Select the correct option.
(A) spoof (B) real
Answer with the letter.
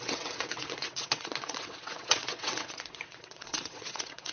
A